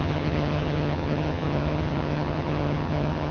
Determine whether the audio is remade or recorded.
remade